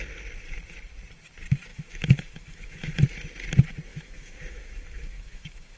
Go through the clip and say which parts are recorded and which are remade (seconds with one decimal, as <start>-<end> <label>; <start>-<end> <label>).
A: 0.0-1.7 recorded; 1.7-3.0 remade; 3.0-3.9 recorded; 3.9-5.8 remade